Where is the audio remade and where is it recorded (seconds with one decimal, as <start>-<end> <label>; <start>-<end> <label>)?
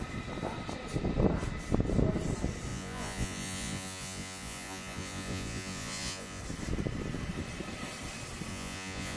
0.0-2.7 recorded; 2.7-6.4 remade; 6.4-8.5 recorded; 8.5-9.2 remade